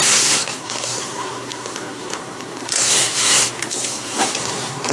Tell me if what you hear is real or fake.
fake